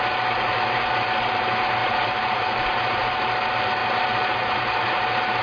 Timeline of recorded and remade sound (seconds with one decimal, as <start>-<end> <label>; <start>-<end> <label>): 0.0-1.8 recorded; 1.8-3.2 remade; 3.2-5.4 recorded